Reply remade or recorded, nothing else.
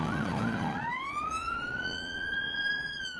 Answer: remade